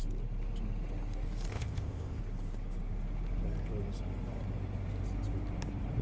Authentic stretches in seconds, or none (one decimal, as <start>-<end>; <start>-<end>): 0.0-1.5; 2.2-6.0